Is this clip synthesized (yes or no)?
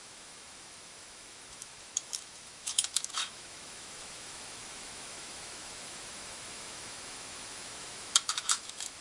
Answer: yes